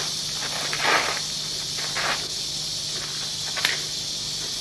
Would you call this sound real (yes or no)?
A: yes